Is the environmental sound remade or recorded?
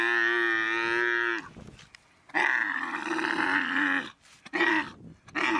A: recorded